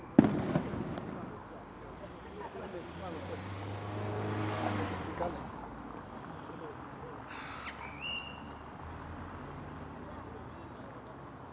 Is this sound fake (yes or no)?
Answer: no